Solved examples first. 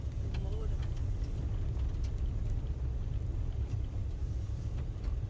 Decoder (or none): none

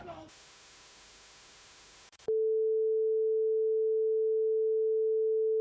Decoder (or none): autoencoder, DAC-VAE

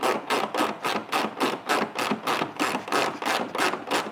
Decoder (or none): none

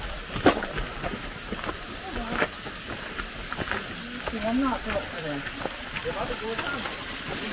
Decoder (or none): none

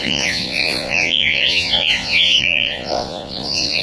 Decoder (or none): vocoder, Vocos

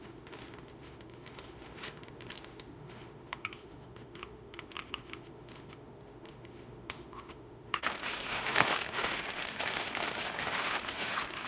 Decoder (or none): autoencoder, DAC-VAE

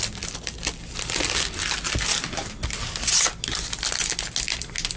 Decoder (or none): none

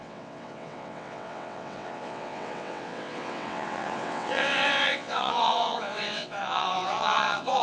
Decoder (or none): vocoder, WaveNeXt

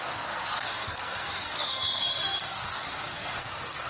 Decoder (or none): codec, SNAC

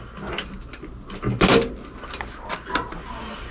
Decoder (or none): none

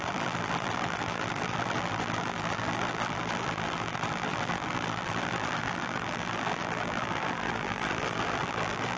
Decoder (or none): vocoder, BigVGAN v2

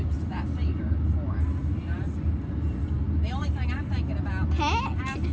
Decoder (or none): none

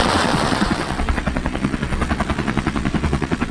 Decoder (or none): vocoder, Vocos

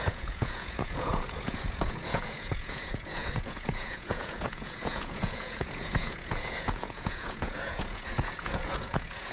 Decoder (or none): vocoder, Vocos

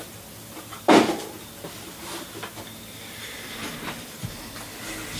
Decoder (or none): none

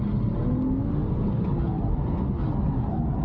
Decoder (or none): none